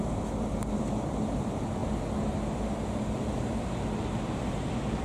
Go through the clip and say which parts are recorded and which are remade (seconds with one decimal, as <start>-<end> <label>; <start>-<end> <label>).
0.0-5.0 recorded

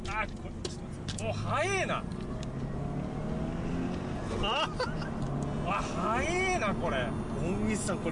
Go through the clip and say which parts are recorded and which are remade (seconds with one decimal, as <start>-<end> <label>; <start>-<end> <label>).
0.0-8.1 recorded